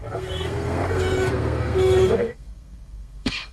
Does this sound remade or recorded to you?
remade